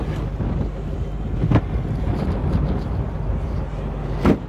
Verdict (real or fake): real